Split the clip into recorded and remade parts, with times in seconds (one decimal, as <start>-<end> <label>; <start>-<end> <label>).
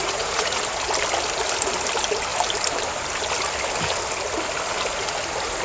0.0-0.6 remade; 0.6-5.6 recorded